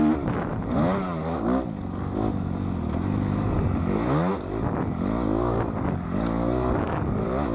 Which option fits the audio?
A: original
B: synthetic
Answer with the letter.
A